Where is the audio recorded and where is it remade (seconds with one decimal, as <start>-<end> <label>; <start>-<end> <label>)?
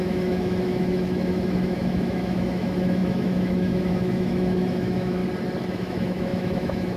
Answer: 0.0-5.2 remade; 5.2-5.7 recorded; 5.7-7.0 remade